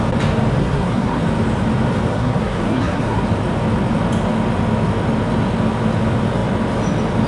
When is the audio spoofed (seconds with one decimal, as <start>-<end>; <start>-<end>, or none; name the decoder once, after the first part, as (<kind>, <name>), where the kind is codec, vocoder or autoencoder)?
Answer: 0.6-1.2 (codec, SNAC); 2.1-3.2